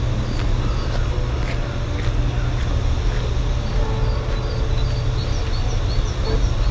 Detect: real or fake real